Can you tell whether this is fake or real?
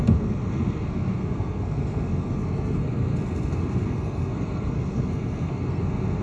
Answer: fake